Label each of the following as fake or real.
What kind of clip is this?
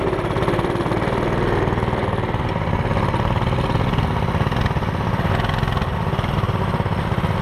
real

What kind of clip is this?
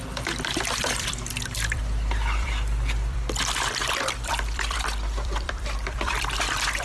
fake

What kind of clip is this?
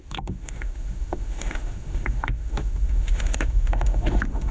fake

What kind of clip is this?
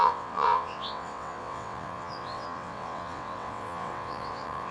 fake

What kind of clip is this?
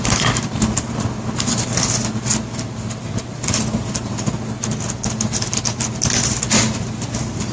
real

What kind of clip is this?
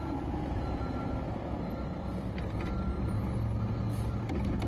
real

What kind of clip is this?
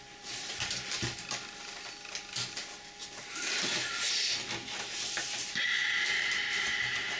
real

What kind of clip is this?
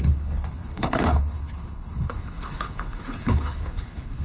fake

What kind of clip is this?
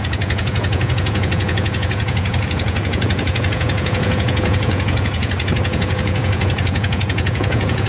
fake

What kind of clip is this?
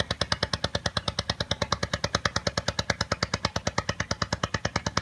real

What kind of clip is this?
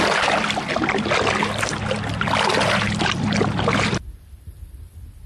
real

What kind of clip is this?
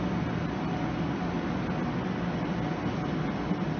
real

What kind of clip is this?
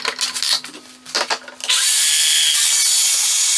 real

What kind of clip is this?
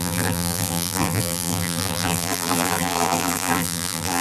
fake